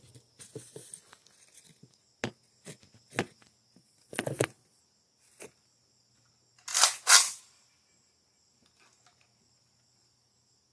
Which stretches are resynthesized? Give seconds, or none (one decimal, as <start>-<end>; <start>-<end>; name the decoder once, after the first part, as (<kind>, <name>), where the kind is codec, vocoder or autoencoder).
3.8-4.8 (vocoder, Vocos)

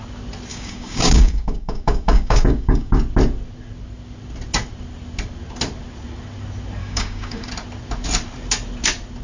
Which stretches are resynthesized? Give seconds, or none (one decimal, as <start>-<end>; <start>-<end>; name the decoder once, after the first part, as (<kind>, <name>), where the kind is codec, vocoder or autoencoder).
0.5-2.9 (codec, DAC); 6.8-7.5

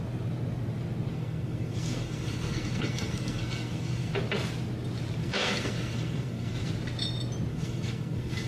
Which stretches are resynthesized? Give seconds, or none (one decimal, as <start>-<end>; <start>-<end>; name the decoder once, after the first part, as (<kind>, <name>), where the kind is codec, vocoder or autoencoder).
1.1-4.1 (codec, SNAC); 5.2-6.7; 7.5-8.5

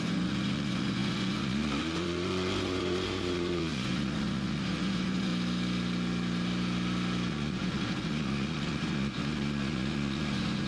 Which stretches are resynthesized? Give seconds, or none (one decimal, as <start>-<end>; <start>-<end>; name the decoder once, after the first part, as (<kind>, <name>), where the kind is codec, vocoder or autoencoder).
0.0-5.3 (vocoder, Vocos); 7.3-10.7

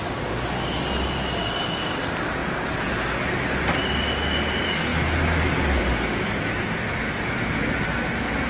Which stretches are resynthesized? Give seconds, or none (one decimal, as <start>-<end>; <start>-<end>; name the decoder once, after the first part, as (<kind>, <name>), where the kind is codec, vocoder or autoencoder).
2.4-2.9 (vocoder, Vocos)

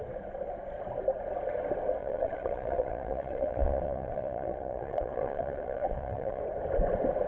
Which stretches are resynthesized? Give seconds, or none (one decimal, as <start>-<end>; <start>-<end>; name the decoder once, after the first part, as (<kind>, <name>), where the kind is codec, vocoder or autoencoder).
2.0-6.4 (vocoder, WaveNeXt)

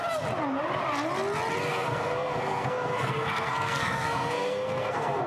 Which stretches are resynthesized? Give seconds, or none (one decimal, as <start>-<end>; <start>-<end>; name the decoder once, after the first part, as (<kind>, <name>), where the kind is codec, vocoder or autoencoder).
1.7-5.3 (codec, SNAC)

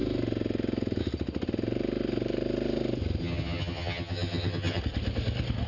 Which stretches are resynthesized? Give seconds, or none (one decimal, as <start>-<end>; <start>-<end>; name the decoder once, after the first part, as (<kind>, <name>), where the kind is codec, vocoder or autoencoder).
3.2-4.8 (vocoder, HiFi-GAN)